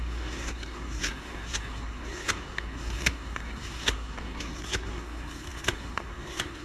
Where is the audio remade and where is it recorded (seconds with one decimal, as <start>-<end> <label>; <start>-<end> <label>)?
0.0-6.6 remade